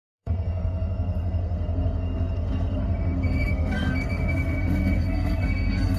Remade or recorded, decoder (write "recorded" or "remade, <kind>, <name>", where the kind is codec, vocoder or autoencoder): remade, codec, SNAC